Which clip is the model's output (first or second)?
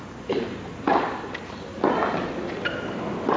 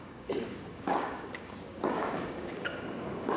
second